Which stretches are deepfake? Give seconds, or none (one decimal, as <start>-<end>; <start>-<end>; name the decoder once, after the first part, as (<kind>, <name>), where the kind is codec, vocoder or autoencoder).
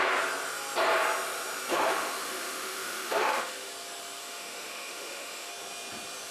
1.7-3.7 (autoencoder, DAC-VAE); 4.2-5.5